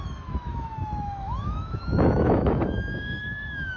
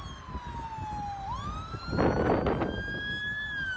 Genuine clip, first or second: second